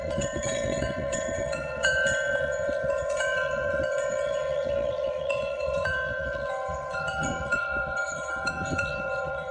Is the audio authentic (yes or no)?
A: no